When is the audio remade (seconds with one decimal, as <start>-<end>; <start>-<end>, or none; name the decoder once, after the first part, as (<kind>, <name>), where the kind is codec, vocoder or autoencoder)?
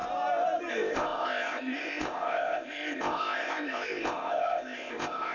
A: 0.7-5.3 (codec, ZipCodec)